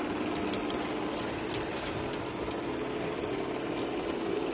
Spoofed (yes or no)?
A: no